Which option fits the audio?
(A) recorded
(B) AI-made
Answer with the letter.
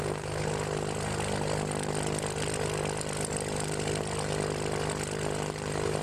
A